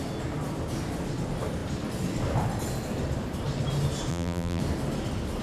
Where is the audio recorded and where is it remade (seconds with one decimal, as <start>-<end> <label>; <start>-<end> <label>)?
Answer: 0.0-4.1 recorded; 4.1-4.6 remade; 4.6-5.4 recorded